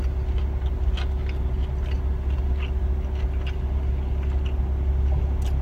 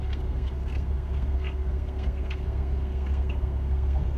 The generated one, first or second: second